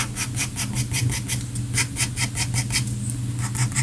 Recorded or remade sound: recorded